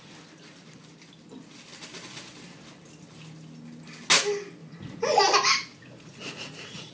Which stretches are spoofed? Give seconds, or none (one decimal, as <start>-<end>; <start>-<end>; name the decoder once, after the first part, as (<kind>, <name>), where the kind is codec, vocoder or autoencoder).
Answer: 4.6-5.2 (vocoder, Vocos); 5.7-6.9